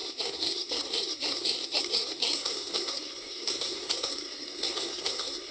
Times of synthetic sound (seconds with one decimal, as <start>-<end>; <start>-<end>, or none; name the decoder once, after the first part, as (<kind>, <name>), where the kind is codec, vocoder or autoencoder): 0.0-5.5 (codec, SNAC)